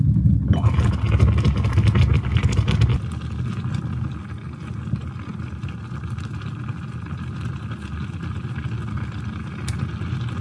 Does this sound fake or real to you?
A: real